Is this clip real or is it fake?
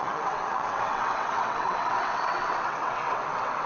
fake